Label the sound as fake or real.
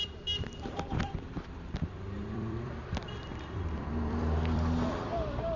fake